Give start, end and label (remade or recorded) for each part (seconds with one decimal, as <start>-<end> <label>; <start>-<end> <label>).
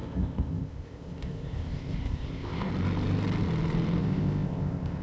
0.0-2.7 remade; 2.7-4.0 recorded; 4.0-5.0 remade